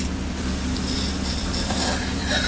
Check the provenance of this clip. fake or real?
fake